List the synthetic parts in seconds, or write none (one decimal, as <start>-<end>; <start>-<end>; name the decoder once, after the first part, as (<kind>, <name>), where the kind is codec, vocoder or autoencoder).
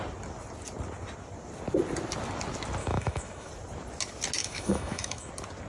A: 2.8-3.5 (autoencoder, DAC-VAE); 4.4-5.3